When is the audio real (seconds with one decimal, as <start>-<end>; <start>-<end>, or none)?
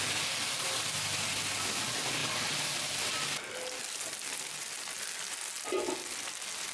0.0-6.7